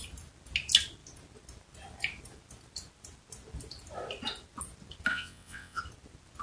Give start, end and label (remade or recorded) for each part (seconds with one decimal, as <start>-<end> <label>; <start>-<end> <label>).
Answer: 0.0-5.1 recorded; 5.1-5.8 remade; 5.8-6.4 recorded